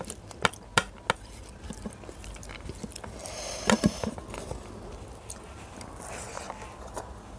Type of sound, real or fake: real